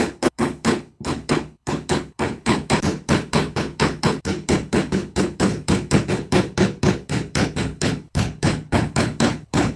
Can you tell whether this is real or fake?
fake